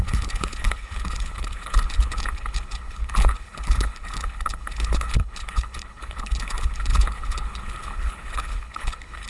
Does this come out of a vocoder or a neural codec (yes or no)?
yes